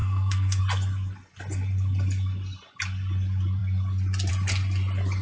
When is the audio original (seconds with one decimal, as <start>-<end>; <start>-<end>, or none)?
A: 0.6-5.2